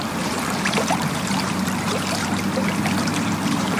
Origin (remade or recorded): remade